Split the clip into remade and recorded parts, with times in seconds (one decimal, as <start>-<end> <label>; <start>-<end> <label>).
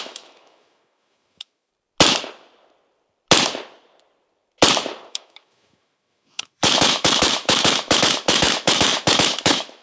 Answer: 0.0-1.7 remade; 1.7-5.1 recorded; 5.1-9.8 remade